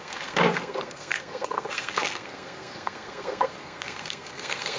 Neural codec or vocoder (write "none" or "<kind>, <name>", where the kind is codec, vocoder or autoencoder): codec, SNAC